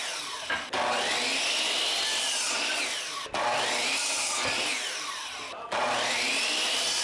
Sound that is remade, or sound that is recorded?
recorded